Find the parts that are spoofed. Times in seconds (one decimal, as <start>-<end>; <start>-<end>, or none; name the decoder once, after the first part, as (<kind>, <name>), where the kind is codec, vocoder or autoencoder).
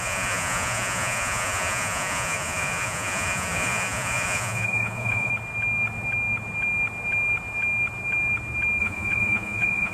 0.0-5.3 (vocoder, Vocos); 8.8-9.9